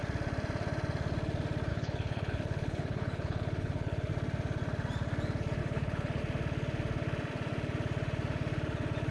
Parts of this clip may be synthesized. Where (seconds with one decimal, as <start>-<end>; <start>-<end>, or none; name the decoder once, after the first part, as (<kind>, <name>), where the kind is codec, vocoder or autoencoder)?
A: 1.7-4.1 (codec, HILCodec); 5.6-6.2